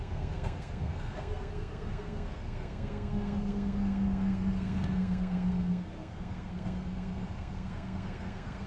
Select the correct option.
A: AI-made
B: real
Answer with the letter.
A